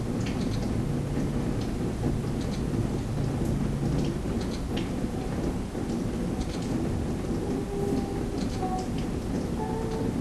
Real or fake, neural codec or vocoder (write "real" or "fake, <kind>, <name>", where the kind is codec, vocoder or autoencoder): real